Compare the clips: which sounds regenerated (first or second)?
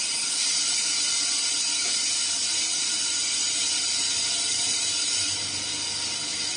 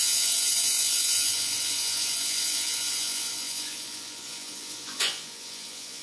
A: second